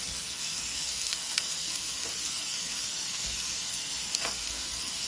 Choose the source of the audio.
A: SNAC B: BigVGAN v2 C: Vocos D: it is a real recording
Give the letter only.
A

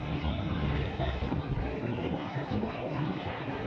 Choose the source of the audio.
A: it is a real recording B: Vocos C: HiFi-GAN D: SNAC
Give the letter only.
D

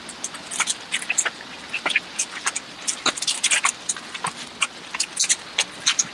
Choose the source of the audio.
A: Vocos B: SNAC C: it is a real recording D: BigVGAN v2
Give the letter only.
C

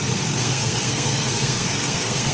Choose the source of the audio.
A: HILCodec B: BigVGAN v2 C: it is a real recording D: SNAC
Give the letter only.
D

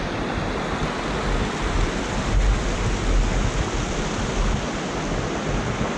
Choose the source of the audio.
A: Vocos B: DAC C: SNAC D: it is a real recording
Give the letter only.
D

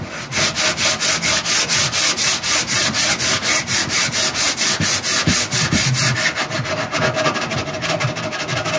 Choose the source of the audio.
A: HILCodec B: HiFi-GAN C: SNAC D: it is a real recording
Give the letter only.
D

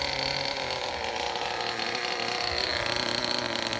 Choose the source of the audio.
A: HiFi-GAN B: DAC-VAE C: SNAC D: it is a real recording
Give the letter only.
D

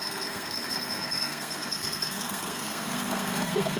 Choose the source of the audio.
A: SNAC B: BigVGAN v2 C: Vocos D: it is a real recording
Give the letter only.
A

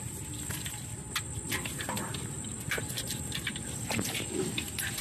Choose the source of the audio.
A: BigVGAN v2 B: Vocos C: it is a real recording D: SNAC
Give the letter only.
C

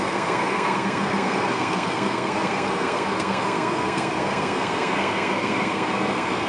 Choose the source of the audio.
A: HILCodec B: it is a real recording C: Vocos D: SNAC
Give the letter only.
D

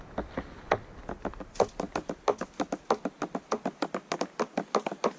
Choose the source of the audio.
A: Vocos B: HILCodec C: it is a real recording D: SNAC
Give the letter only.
C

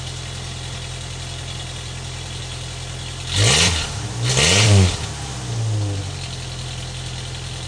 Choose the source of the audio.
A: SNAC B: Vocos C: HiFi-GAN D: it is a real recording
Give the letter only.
D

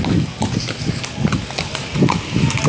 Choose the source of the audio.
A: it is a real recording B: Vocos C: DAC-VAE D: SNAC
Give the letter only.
A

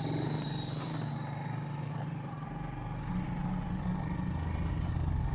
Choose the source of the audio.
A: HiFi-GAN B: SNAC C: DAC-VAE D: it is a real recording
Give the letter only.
D